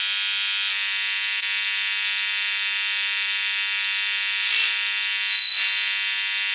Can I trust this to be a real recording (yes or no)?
yes